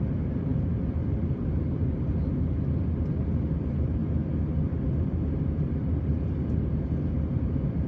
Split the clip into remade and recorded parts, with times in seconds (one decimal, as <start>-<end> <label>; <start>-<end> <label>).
0.0-4.0 remade; 4.0-5.5 recorded; 5.5-7.9 remade